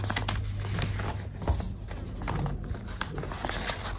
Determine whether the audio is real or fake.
real